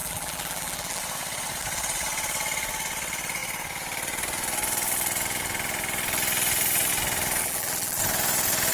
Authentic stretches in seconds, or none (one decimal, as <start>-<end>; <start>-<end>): 1.0-7.4; 8.0-8.7